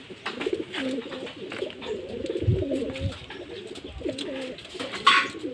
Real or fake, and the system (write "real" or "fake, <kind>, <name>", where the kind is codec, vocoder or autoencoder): real